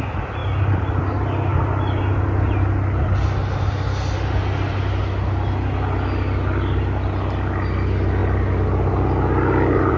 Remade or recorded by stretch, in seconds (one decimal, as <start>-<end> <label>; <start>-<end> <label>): 0.0-10.0 recorded